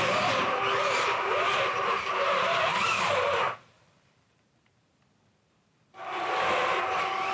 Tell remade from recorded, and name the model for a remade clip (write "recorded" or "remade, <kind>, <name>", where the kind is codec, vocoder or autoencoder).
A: remade, vocoder, BigVGAN v2